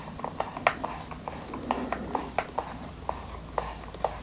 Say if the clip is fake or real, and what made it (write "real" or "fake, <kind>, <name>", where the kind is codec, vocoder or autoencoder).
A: real